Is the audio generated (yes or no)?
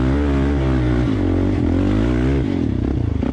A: no